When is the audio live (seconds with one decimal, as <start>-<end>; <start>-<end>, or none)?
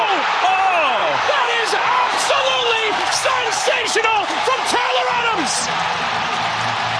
0.0-1.0; 5.1-7.0